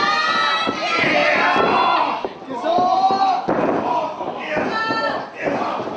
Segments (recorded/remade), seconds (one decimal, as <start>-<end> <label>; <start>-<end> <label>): 0.0-6.0 recorded